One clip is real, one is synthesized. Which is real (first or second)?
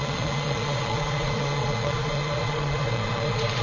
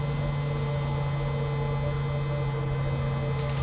second